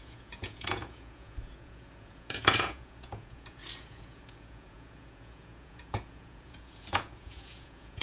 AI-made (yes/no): yes